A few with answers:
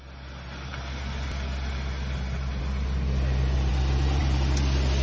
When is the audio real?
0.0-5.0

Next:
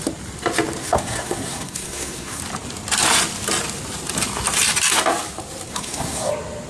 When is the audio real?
0.0-0.8; 2.4-5.7; 6.3-6.7